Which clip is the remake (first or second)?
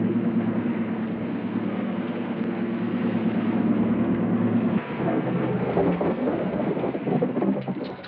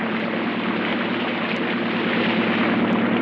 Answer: first